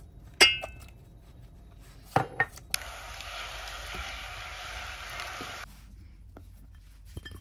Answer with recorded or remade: recorded